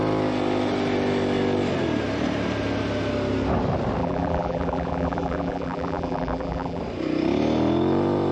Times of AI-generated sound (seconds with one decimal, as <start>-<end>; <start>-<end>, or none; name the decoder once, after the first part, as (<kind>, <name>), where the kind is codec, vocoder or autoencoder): 4.0-6.8 (vocoder, BigVGAN v2)